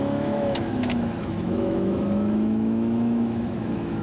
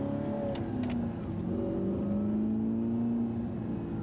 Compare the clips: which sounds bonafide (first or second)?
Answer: second